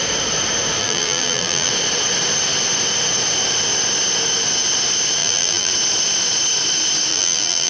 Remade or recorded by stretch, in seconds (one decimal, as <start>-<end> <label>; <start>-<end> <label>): 0.0-0.8 recorded; 0.8-1.7 remade; 1.7-5.2 recorded; 5.2-5.7 remade; 5.7-7.1 recorded; 7.1-7.7 remade